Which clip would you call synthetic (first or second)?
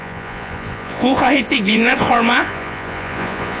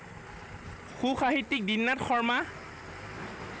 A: first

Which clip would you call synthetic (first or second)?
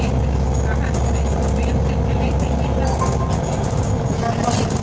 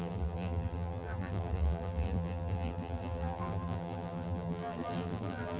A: second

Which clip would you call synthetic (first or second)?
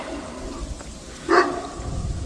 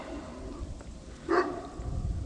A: second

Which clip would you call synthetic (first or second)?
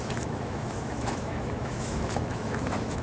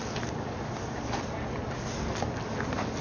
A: first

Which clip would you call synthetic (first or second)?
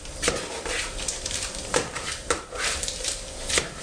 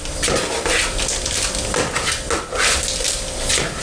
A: first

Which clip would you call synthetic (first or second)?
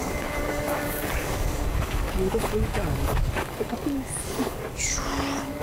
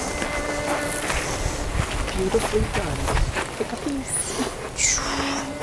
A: first